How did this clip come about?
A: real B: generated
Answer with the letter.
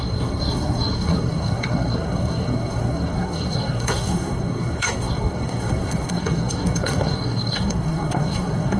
B